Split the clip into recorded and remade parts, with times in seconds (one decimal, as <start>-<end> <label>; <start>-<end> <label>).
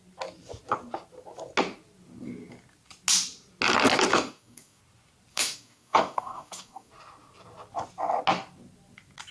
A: 0.0-4.1 recorded; 4.1-4.8 remade; 4.8-5.3 recorded; 5.3-6.9 remade; 6.9-9.3 recorded